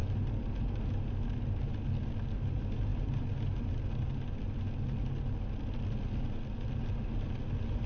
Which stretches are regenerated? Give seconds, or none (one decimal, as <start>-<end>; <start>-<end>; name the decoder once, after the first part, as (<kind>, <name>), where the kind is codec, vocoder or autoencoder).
none